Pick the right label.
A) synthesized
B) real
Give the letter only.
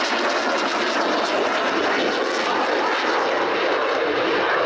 B